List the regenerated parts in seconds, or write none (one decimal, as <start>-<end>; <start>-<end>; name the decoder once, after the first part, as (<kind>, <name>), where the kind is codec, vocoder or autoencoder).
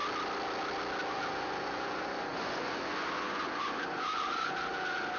1.1-5.2 (vocoder, Vocos)